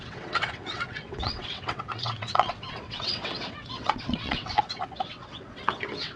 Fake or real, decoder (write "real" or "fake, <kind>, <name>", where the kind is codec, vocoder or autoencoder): fake, vocoder, WaveNeXt